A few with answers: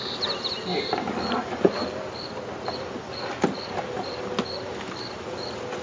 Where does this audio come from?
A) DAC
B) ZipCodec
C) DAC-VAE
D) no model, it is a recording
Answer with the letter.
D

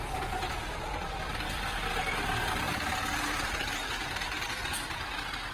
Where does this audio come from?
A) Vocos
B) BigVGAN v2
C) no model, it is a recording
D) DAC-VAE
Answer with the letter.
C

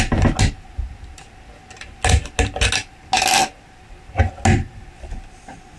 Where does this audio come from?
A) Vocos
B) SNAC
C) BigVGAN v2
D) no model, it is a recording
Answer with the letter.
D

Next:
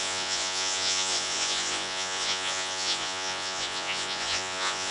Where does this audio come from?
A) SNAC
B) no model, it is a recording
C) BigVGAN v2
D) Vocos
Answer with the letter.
D